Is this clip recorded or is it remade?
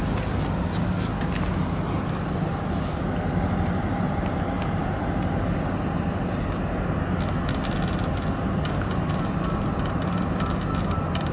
recorded